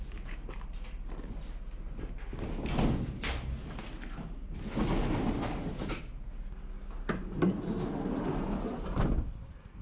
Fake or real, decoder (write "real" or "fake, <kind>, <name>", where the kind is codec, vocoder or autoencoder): real